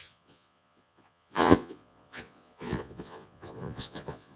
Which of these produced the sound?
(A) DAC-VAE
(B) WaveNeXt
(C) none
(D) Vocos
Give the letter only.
D